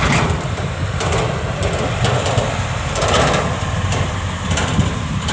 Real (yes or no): no